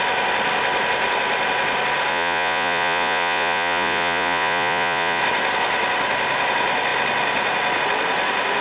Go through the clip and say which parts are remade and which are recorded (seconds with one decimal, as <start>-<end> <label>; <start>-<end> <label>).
0.0-2.1 recorded; 2.1-5.2 remade; 5.2-8.6 recorded